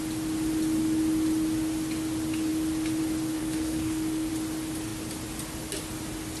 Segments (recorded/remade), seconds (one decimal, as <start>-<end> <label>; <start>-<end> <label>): 0.0-3.4 recorded; 3.4-4.3 remade; 4.3-6.4 recorded

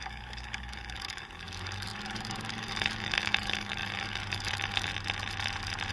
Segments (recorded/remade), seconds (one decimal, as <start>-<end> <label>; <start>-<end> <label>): 0.0-4.9 remade; 4.9-5.9 recorded

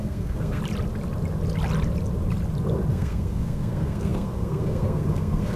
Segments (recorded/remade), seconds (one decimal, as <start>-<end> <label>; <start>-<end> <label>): 0.0-0.6 remade; 0.6-2.9 recorded; 2.9-5.6 remade

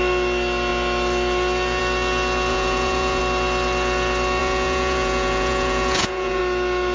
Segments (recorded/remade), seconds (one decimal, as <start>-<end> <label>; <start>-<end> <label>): 0.0-2.5 recorded; 2.5-3.2 remade; 3.2-4.4 recorded; 4.4-6.4 remade; 6.4-6.9 recorded

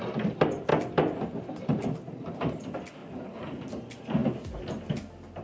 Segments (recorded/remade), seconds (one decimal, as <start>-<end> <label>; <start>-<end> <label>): 0.0-3.0 recorded; 3.0-3.7 remade; 3.7-5.4 recorded

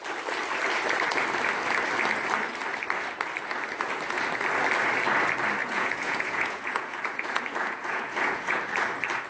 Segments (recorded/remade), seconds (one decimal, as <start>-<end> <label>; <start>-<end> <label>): 0.0-5.6 recorded; 5.6-8.6 remade; 8.6-9.3 recorded

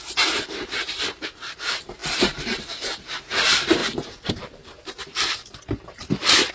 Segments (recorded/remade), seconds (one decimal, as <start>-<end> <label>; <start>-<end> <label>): 0.0-6.5 remade